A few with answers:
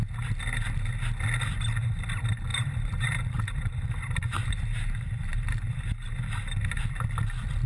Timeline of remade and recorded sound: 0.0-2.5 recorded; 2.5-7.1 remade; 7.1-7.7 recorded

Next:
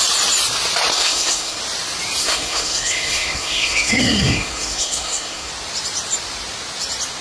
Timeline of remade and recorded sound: 0.0-0.9 recorded; 0.9-1.6 remade; 1.6-2.2 recorded; 2.2-5.5 remade; 5.5-7.2 recorded

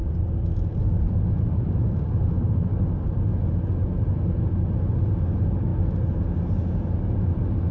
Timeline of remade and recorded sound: 0.0-3.2 remade; 3.2-7.7 recorded

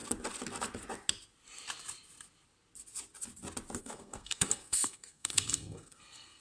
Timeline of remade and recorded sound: 0.0-3.8 recorded; 3.8-6.4 remade

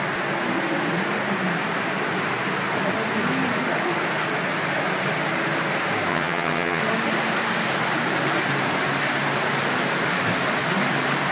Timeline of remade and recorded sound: 0.0-6.1 recorded; 6.1-6.8 remade; 6.8-11.3 recorded